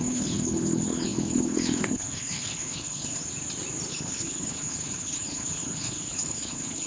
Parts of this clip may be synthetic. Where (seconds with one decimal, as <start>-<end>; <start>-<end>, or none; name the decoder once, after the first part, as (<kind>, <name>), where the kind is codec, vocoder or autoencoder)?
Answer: 0.0-3.2 (codec, HILCodec); 3.9-6.9